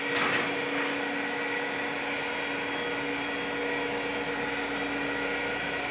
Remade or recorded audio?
recorded